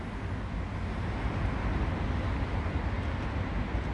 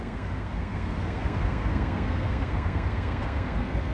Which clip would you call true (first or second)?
first